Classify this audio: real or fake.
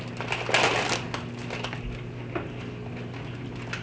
real